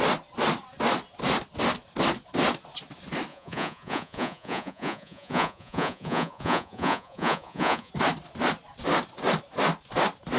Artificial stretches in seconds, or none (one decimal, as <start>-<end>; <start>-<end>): 3.3-7.9